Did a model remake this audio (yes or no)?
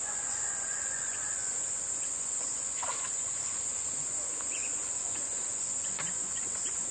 yes